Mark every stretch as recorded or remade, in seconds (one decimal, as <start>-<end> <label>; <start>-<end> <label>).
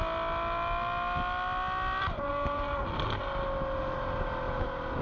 0.0-2.3 recorded; 2.3-2.8 remade; 2.8-5.0 recorded